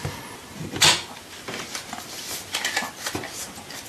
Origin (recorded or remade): recorded